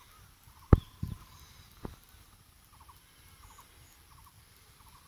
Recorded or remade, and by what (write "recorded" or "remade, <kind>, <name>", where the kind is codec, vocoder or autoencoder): recorded